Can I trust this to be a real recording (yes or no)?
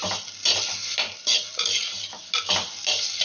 yes